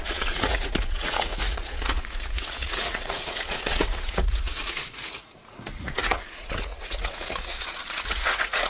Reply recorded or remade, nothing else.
remade